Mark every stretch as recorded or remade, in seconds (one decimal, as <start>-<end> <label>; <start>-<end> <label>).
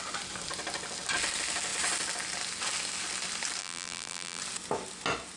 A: 0.0-3.6 recorded; 3.6-4.4 remade; 4.4-5.4 recorded